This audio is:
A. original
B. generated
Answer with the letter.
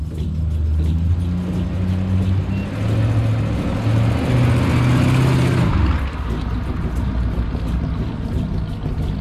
A